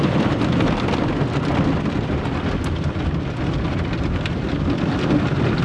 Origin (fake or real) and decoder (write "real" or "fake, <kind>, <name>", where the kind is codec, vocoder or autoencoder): real